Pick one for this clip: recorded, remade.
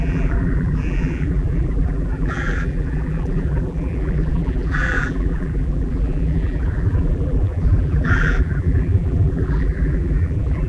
remade